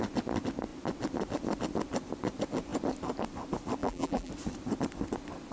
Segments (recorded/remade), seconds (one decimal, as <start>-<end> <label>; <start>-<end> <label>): 0.0-3.8 recorded; 3.8-4.3 remade; 4.3-5.5 recorded